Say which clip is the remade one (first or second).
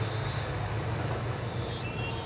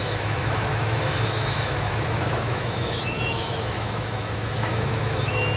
second